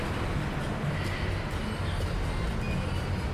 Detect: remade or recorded recorded